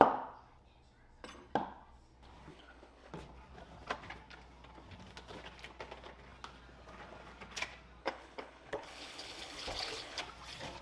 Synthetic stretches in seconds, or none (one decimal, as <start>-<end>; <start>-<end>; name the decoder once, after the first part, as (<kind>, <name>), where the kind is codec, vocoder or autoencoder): 2.5-3.1 (codec, HILCodec); 8.0-10.2